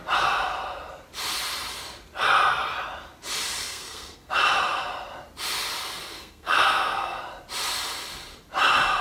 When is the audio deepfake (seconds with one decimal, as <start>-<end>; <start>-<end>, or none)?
3.6-4.3; 6.1-7.2